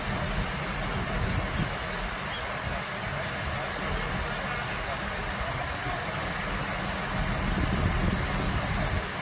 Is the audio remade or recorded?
recorded